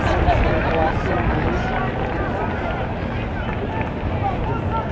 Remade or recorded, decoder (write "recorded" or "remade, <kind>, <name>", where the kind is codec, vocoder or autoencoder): recorded